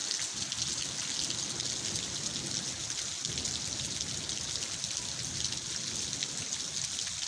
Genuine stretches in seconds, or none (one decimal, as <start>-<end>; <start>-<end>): 0.0-7.3